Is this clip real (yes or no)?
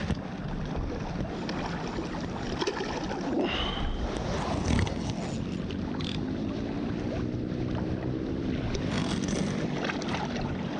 yes